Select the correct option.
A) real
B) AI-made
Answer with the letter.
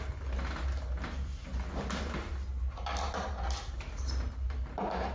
A